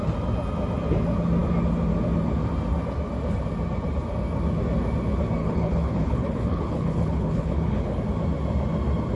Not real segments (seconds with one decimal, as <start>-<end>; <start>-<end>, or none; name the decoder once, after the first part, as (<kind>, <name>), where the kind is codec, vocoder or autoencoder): 5.4-8.0 (codec, HILCodec)